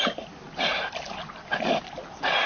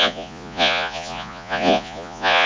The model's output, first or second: second